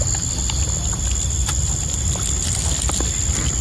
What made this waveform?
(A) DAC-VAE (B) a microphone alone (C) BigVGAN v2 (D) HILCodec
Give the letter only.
B